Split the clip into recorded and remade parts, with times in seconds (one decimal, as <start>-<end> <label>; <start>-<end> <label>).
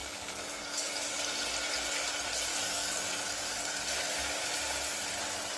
0.0-1.2 remade; 1.2-2.5 recorded; 2.5-4.5 remade; 4.5-5.6 recorded